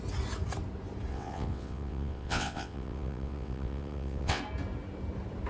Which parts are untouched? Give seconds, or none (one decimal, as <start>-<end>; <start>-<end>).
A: 0.0-1.1; 4.4-5.5